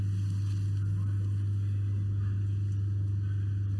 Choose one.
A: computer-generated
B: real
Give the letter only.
B